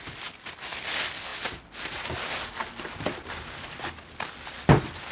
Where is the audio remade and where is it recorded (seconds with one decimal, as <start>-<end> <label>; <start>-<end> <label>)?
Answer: 0.0-5.1 recorded